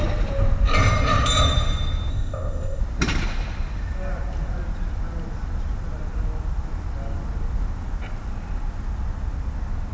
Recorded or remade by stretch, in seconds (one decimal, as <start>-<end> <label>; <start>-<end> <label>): 0.0-2.1 recorded; 2.1-2.8 remade; 2.8-9.9 recorded